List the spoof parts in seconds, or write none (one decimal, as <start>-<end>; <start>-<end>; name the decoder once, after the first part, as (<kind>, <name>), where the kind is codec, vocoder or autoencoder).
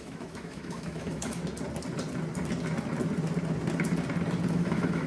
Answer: 0.0-1.4 (autoencoder, DAC-VAE); 4.5-5.1